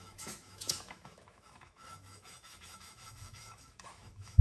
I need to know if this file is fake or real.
fake